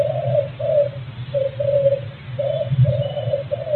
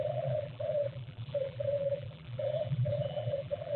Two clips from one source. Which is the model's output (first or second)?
second